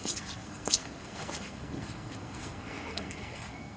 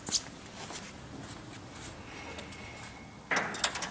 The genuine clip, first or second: second